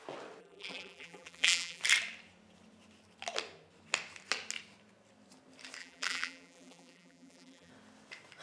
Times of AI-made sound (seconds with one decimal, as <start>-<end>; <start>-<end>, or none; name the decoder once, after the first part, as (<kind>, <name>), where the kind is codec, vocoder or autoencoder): 0.4-1.8 (vocoder, BigVGAN v2); 5.8-7.7